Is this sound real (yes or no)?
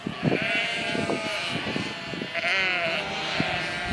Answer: yes